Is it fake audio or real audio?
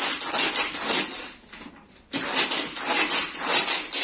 real